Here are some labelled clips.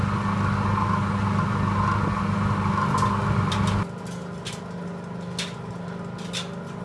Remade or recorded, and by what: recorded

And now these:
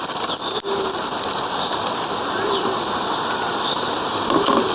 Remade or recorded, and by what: recorded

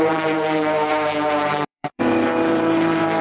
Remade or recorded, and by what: remade, vocoder, BigVGAN v2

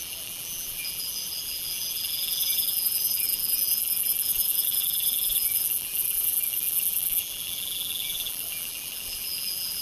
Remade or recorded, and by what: remade, vocoder, BigVGAN v2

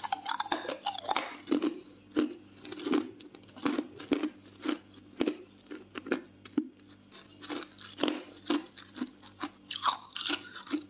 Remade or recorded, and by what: recorded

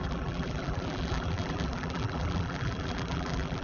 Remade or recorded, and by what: remade, vocoder, BigVGAN v2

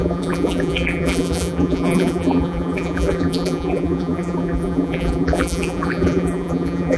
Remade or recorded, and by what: remade, vocoder, BigVGAN v2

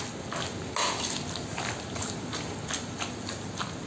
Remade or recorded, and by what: recorded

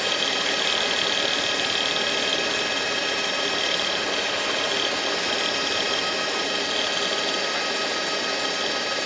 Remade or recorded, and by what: recorded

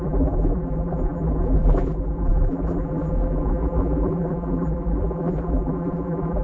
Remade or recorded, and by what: remade, vocoder, BigVGAN v2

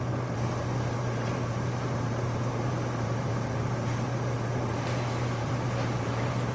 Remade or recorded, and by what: remade, vocoder, BigVGAN v2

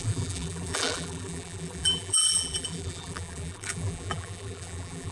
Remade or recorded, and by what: remade, vocoder, BigVGAN v2